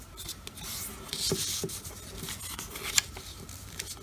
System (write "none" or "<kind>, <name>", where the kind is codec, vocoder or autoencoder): none